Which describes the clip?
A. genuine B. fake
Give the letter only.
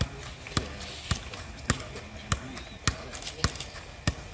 A